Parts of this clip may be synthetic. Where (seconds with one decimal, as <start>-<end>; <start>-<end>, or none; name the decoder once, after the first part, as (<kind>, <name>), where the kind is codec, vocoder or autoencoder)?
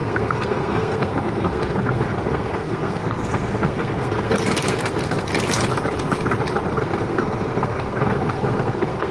0.0-5.3 (codec, SNAC); 6.7-9.1